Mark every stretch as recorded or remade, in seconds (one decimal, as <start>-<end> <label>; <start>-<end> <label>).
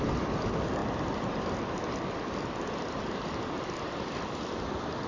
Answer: 0.0-5.1 recorded